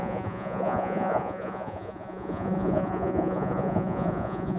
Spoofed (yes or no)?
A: yes